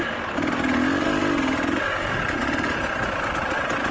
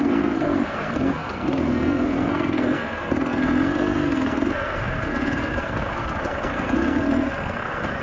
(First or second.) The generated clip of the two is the second